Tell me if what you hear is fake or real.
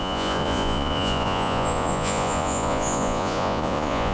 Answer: fake